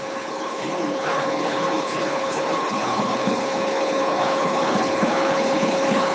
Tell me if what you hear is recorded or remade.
remade